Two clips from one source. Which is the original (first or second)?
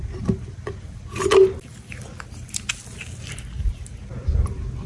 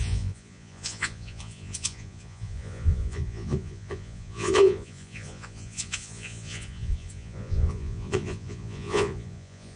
first